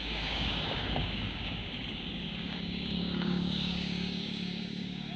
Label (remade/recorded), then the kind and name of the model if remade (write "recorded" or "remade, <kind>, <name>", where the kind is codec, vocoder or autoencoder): remade, codec, DAC